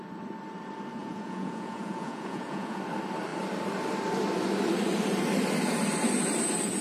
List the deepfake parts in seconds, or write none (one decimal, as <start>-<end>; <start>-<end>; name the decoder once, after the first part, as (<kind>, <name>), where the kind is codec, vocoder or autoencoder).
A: 1.0-2.8 (vocoder, Vocos)